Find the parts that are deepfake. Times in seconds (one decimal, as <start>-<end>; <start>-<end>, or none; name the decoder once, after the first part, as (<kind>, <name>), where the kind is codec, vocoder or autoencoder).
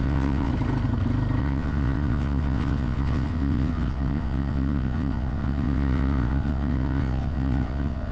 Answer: 0.0-0.5 (vocoder, WaveNeXt); 1.4-8.1